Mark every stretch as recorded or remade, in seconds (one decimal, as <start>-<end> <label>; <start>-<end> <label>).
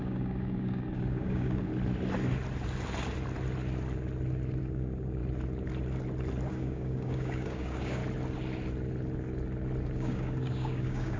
0.0-1.7 remade; 1.7-4.6 recorded; 4.6-5.2 remade; 5.2-6.5 recorded; 6.5-8.0 remade; 8.0-9.9 recorded; 9.9-11.2 remade